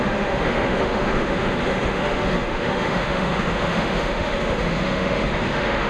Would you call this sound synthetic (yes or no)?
yes